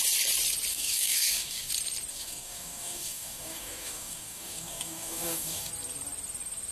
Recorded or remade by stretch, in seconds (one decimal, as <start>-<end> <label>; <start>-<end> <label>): 0.0-0.7 recorded; 0.7-1.7 remade; 1.7-2.1 recorded; 2.1-5.7 remade; 5.7-6.7 recorded